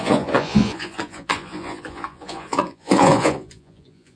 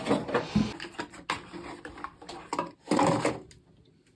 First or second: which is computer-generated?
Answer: first